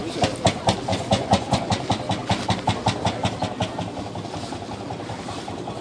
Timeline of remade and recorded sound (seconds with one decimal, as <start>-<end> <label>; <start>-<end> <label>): 0.0-0.9 recorded; 0.9-1.7 remade; 1.7-5.8 recorded